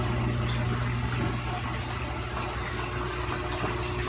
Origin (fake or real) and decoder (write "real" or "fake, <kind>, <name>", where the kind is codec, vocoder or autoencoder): real